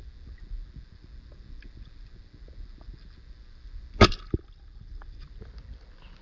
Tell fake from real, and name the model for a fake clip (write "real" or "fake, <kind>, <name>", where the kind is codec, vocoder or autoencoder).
real